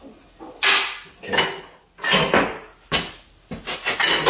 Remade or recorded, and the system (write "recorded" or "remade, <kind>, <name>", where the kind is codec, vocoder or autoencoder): recorded